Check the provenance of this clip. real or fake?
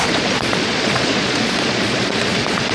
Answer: fake